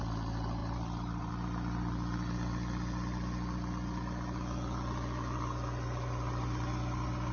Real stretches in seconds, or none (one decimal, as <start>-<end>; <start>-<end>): 0.0-0.6; 1.3-7.3